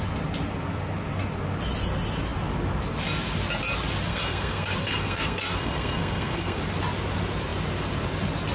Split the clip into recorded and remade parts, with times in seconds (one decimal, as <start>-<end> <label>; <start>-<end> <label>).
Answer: 0.0-4.1 recorded; 4.1-6.6 remade; 6.6-8.5 recorded